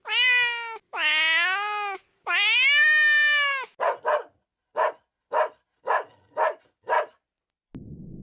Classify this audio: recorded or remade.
recorded